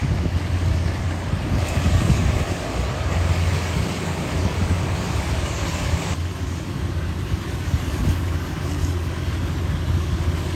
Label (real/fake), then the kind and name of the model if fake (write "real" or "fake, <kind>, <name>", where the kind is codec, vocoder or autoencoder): fake, codec, DAC